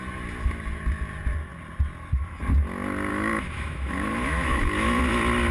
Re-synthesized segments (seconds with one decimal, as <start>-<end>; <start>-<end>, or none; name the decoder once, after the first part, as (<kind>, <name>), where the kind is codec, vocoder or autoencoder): 3.1-5.0 (autoencoder, DAC-VAE)